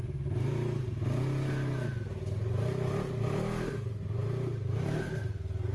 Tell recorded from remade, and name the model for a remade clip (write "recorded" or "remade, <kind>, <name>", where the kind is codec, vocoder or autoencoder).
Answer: recorded